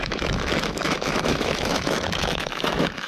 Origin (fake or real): fake